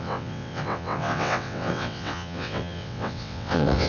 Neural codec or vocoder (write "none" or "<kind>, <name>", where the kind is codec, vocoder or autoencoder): vocoder, WaveNeXt